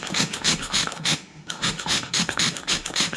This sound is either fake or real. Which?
fake